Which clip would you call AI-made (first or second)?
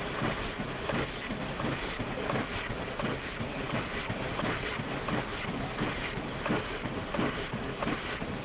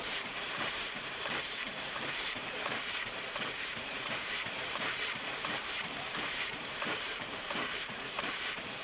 second